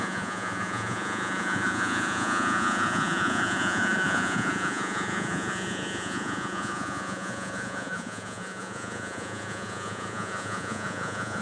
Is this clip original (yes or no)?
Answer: no